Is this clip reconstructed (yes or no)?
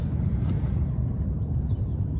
yes